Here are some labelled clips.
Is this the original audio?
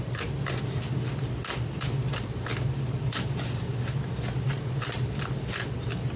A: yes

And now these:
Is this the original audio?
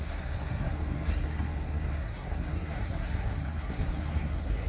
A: no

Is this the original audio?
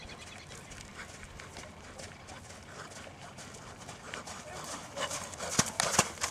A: yes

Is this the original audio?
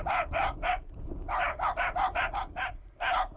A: yes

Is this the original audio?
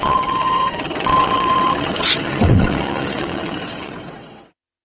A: no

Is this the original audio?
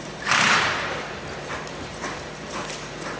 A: no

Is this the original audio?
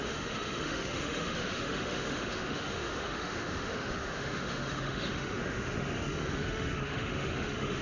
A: no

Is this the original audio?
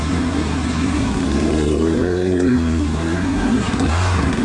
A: no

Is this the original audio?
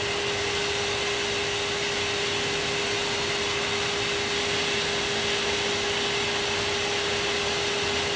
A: yes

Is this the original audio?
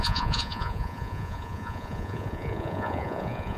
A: no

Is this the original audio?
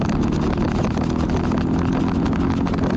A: yes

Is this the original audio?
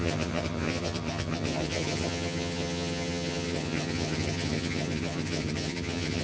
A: no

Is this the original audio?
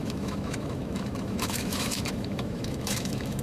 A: no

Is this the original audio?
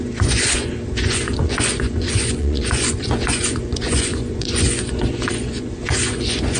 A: no